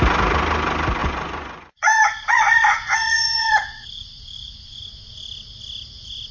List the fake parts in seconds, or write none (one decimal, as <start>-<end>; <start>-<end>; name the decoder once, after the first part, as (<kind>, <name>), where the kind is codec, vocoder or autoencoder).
1.0-4.8 (vocoder, Vocos)